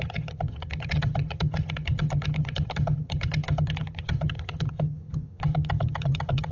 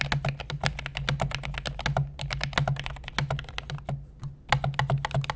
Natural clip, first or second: second